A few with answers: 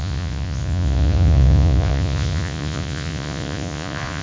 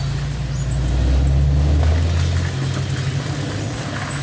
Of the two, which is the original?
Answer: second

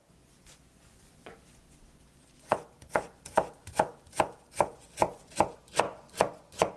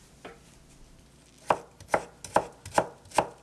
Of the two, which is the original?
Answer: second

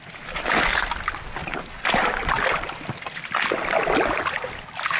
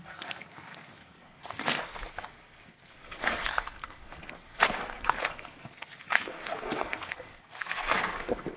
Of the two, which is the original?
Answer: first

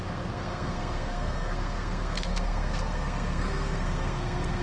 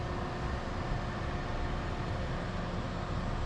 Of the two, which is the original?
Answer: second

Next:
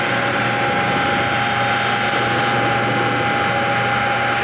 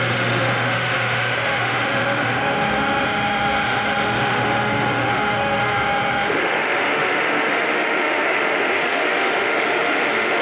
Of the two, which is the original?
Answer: first